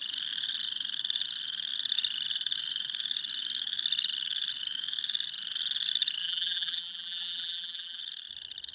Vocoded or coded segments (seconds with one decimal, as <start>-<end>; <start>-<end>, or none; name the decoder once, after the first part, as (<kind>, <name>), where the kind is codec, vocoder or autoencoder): 6.2-8.0 (vocoder, BigVGAN v2)